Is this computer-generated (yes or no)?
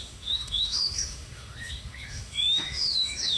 yes